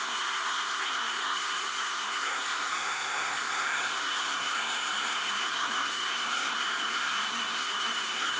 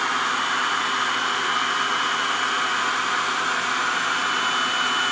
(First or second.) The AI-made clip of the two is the first